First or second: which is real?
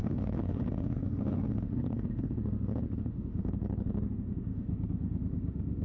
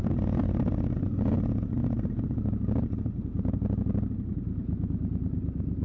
second